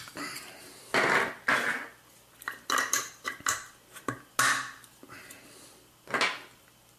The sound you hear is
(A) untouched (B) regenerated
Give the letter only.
A